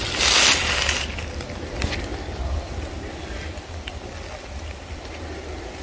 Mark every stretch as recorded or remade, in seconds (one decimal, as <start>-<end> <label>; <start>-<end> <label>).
0.0-5.8 recorded